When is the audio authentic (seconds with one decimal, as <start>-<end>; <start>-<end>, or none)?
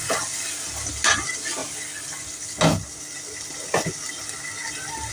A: 0.0-5.1